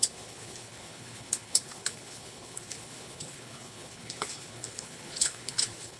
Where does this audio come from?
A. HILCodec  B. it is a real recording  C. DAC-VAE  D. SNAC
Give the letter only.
A